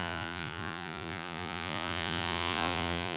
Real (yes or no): no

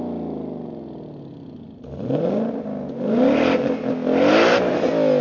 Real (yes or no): yes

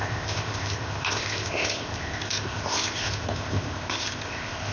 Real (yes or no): no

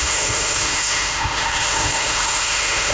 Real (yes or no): no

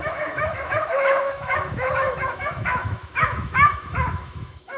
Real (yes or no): no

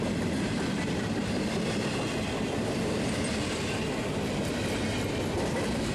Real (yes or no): no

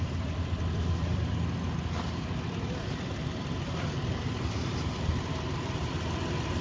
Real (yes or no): no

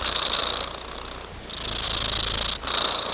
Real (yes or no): yes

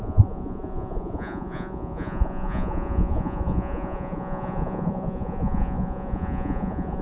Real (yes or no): no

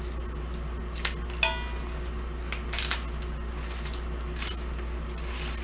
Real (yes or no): yes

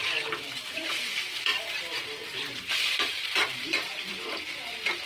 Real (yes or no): no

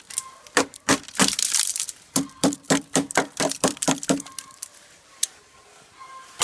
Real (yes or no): no